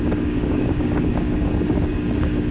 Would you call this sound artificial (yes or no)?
yes